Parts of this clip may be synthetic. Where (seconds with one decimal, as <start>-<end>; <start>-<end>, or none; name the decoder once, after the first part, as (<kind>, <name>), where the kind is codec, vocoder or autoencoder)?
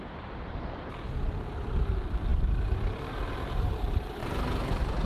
0.0-4.2 (vocoder, BigVGAN v2)